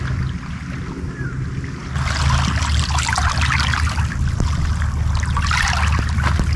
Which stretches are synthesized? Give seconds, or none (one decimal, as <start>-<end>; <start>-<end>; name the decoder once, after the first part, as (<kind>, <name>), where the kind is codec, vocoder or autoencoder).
none